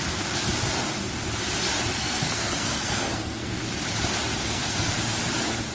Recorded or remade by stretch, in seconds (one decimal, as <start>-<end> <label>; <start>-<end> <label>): 0.0-1.9 recorded; 1.9-3.6 remade; 3.6-4.4 recorded; 4.4-4.9 remade; 4.9-5.7 recorded